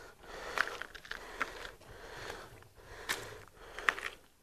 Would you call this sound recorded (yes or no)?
yes